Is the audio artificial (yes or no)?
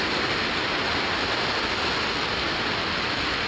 no